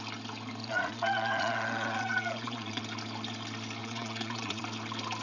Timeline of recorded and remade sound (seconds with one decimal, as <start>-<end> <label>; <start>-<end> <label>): 0.0-0.6 recorded; 0.6-2.8 remade; 2.8-3.8 recorded; 3.8-4.6 remade; 4.6-5.2 recorded